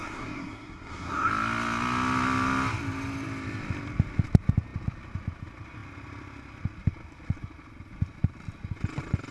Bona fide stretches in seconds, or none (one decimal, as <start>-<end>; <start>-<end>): 1.3-9.3